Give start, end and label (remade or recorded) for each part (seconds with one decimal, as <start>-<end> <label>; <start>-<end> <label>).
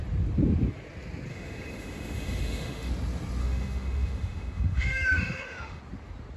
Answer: 0.0-1.3 recorded; 1.3-2.9 remade; 2.9-3.4 recorded; 3.4-5.8 remade; 5.8-6.4 recorded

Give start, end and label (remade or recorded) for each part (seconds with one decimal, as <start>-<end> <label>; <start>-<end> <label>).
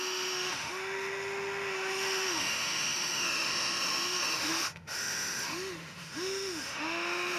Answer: 0.0-7.4 remade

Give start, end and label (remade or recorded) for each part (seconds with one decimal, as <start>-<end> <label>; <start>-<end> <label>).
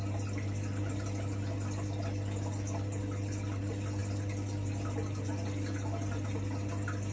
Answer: 0.0-7.1 recorded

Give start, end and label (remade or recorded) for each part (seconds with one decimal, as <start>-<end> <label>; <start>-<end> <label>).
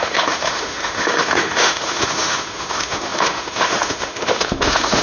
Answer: 0.0-5.0 remade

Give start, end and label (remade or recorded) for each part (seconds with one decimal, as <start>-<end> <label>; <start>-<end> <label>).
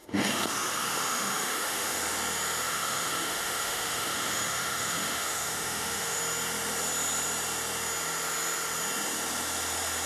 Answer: 0.0-2.0 remade; 2.0-2.7 recorded; 2.7-6.2 remade; 6.2-10.1 recorded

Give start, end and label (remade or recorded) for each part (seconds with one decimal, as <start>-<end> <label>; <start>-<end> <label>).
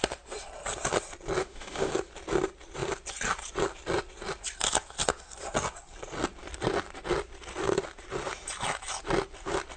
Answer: 0.0-1.4 recorded; 1.4-1.9 remade; 1.9-9.8 recorded